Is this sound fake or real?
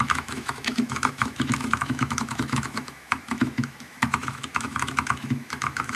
fake